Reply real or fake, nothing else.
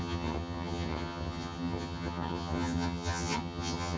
fake